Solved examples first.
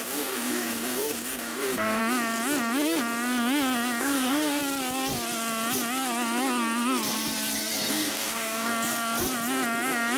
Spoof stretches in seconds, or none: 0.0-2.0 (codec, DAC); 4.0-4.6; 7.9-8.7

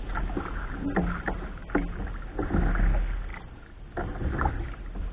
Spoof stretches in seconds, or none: none

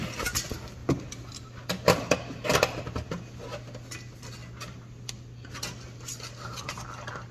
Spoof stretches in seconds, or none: none

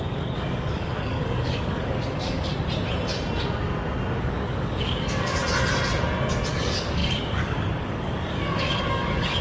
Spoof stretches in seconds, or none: 0.0-2.5 (codec, DAC); 4.2-5.4; 6.5-9.4

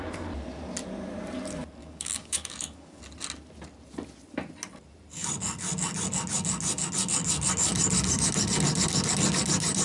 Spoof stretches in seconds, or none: 1.8-3.0 (codec, DAC)

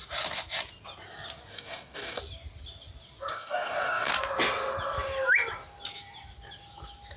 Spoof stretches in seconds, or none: 1.5-2.2 (codec, DAC); 3.3-4.1